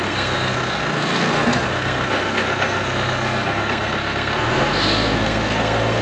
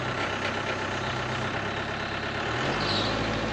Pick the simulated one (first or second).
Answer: first